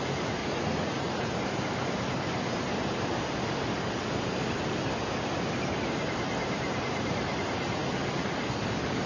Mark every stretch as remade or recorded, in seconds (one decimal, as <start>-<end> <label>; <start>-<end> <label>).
0.0-0.4 recorded; 0.4-1.3 remade; 1.3-9.1 recorded